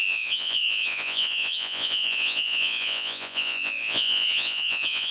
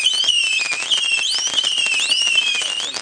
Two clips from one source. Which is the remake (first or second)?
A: first